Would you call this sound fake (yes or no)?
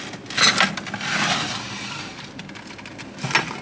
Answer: no